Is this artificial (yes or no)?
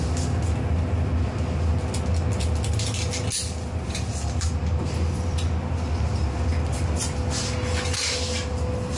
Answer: no